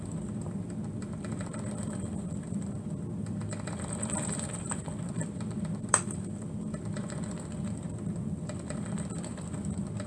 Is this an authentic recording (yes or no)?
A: no